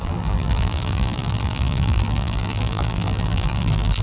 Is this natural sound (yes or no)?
no